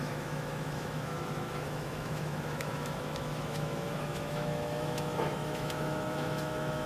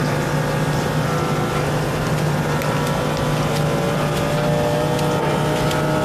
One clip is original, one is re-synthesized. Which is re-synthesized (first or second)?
first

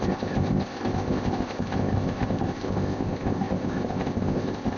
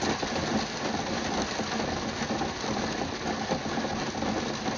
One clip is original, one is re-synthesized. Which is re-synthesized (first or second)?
first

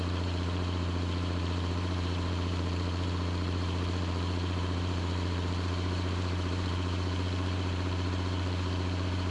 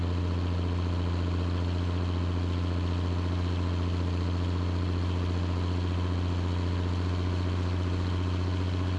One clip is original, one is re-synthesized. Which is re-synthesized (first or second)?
first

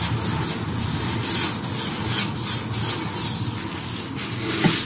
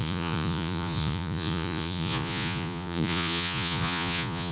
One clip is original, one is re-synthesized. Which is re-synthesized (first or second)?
second